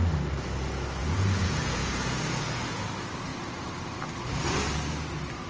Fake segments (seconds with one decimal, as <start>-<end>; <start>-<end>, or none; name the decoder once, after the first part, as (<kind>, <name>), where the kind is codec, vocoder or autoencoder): 1.0-2.8 (vocoder, Vocos)